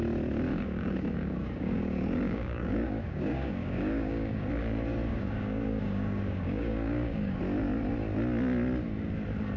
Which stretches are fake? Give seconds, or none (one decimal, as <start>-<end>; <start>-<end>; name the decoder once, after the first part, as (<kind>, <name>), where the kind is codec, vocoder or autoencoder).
0.5-4.5 (codec, DAC); 5.1-7.4